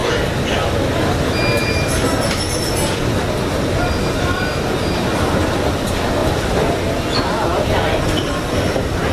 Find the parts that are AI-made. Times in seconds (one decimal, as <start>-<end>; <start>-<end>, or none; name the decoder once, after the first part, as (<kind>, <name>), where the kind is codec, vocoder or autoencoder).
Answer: 0.0-0.7 (vocoder, BigVGAN v2); 6.2-6.8

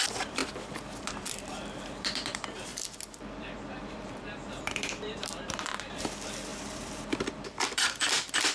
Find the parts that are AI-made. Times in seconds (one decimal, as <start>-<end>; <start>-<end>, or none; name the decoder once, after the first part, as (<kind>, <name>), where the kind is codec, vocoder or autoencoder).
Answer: 0.0-8.5 (vocoder, BigVGAN v2)

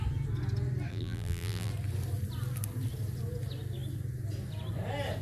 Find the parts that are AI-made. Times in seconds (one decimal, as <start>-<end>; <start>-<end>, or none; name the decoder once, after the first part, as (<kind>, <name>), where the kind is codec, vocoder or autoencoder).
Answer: 0.9-1.7 (vocoder, BigVGAN v2)

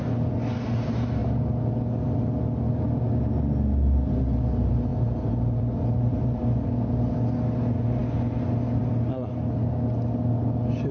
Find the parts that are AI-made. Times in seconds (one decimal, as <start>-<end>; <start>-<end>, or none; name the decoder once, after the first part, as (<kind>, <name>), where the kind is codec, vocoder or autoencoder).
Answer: 4.9-6.4 (vocoder, BigVGAN v2)

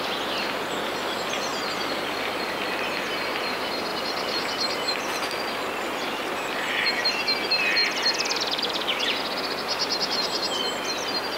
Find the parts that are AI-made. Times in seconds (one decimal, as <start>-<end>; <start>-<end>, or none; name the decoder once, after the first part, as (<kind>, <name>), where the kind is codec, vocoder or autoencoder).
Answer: 1.5-3.4 (vocoder, BigVGAN v2); 3.9-7.0; 7.8-9.2

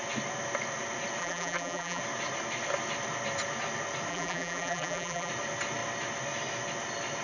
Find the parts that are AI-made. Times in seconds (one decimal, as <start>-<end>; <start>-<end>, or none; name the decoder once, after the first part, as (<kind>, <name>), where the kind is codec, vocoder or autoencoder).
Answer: 1.2-2.0 (vocoder, BigVGAN v2); 4.1-5.3

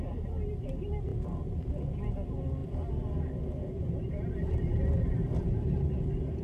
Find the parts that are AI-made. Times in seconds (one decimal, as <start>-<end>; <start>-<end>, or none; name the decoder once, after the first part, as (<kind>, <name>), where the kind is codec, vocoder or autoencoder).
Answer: 4.8-5.4 (vocoder, BigVGAN v2)

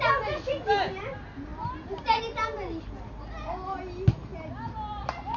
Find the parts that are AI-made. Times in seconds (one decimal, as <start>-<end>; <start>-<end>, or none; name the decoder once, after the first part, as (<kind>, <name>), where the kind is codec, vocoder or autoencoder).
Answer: 1.5-2.2 (vocoder, BigVGAN v2)